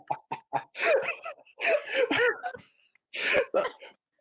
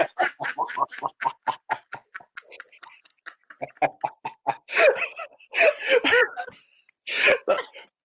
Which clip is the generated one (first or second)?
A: second